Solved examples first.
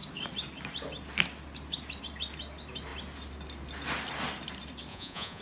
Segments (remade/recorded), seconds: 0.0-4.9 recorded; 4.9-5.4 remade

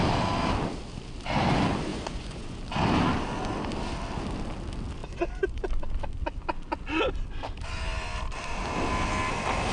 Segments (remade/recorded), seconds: 0.0-1.9 recorded; 1.9-2.6 remade; 2.6-5.0 recorded; 5.0-5.7 remade; 5.7-9.7 recorded

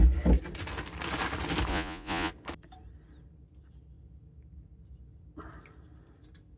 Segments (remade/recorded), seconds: 0.0-1.7 recorded; 1.7-2.3 remade; 2.3-6.6 recorded

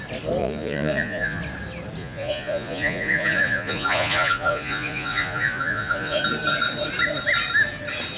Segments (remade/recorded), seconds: 0.0-0.4 recorded; 0.4-1.4 remade; 1.4-2.0 recorded; 2.0-6.2 remade; 6.2-8.2 recorded

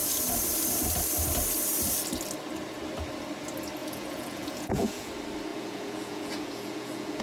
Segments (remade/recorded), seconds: 0.0-3.8 recorded; 3.8-5.1 remade; 5.1-5.5 recorded; 5.5-7.2 remade